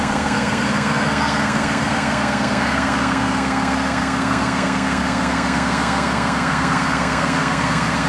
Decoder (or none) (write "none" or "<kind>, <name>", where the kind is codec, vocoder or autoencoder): codec, SNAC